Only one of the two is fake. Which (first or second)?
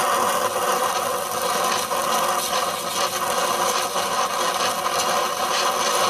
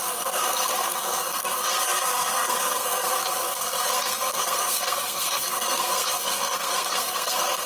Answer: second